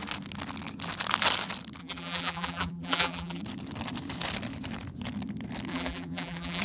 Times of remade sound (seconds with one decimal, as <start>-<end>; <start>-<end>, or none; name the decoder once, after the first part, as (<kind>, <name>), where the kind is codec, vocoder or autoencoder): 1.8-3.4 (vocoder, BigVGAN v2); 5.7-6.6

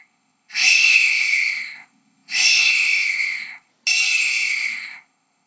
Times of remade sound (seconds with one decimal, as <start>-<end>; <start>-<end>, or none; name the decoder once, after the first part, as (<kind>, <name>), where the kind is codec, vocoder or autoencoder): 0.0-3.7 (codec, ZipCodec); 4.2-5.5

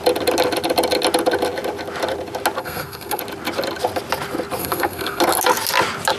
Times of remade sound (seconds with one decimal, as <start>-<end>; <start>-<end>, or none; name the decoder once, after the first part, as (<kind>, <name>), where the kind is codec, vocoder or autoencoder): 2.6-3.2 (codec, SNAC); 4.6-5.2

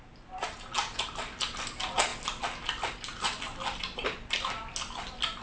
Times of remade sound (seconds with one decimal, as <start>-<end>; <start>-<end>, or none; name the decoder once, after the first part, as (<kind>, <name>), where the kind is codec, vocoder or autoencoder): none

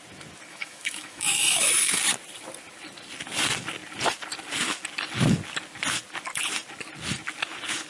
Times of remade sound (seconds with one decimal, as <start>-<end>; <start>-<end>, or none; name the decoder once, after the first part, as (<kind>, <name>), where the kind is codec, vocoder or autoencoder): 0.5-2.0 (autoencoder, DAC-VAE)